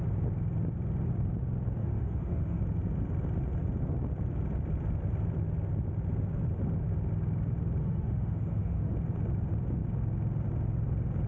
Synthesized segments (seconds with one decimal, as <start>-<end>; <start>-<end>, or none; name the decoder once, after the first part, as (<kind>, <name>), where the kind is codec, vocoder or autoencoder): 1.8-2.6 (autoencoder, DAC-VAE); 7.8-8.9